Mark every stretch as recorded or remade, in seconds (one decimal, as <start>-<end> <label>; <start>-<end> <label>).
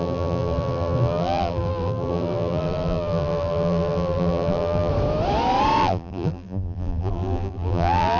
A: 0.0-4.9 remade; 4.9-5.8 recorded; 5.8-8.2 remade